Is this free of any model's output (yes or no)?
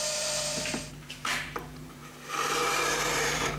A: no